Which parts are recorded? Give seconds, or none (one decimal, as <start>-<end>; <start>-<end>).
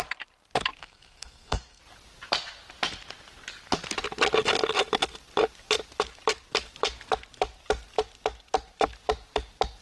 0.0-0.8; 1.8-9.8